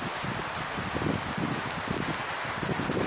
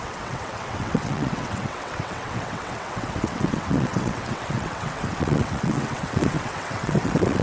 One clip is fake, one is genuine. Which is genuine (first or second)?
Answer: first